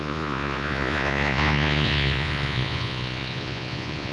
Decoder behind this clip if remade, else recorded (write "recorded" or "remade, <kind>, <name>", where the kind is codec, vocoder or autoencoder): remade, vocoder, Vocos